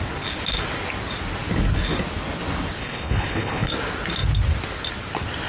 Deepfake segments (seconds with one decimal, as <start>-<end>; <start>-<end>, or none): 2.8-3.7